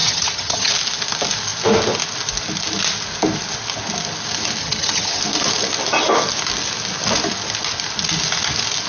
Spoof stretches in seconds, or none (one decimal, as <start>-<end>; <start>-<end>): 0.0-0.7; 4.6-5.2